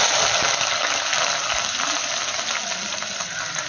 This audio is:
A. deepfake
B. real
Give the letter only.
B